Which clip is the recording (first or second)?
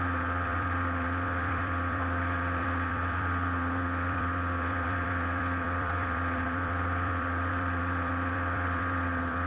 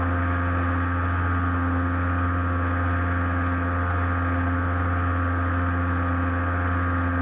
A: second